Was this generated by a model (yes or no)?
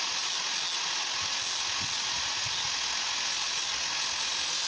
no